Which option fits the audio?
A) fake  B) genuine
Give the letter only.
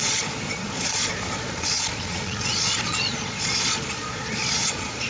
A